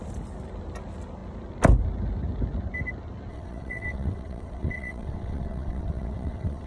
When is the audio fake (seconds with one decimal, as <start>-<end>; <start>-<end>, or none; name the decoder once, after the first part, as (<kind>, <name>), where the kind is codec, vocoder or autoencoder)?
3.3-6.7 (vocoder, WaveNeXt)

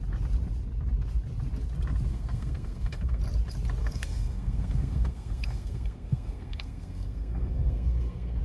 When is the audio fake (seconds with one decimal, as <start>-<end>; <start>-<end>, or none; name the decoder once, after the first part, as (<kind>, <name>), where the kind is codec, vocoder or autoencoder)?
2.1-3.2 (codec, SNAC); 3.8-8.4

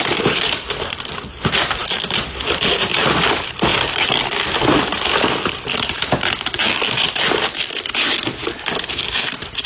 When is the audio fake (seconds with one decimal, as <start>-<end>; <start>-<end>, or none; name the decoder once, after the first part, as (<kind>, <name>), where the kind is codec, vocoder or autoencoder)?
0.0-1.8 (vocoder, BigVGAN v2); 2.4-3.7; 8.9-9.7

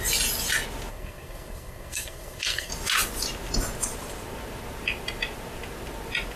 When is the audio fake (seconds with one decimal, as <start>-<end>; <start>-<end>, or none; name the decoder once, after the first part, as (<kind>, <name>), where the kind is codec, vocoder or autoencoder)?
0.9-2.7 (codec, SNAC)

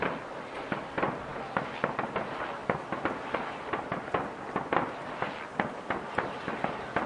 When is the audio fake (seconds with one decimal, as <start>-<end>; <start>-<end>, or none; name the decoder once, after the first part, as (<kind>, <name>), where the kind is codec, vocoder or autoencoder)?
none

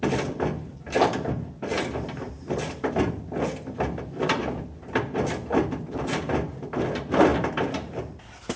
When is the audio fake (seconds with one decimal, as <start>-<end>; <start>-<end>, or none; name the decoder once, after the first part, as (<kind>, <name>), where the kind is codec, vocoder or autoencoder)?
none

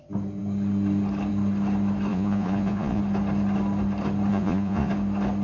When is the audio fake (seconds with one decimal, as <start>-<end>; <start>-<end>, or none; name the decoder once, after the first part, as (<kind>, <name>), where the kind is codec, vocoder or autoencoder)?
2.1-3.0 (vocoder, Vocos); 4.3-4.9

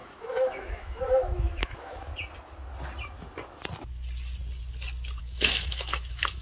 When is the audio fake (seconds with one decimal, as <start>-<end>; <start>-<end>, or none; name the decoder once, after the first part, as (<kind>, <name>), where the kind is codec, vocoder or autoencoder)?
0.0-2.1 (autoencoder, DAC-VAE); 5.2-6.4